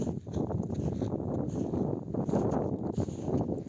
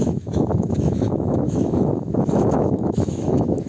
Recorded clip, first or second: first